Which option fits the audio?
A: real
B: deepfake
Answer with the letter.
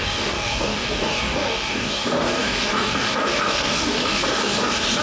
B